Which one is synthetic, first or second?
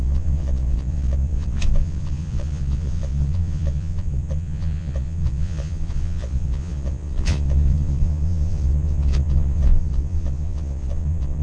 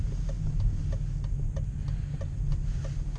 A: first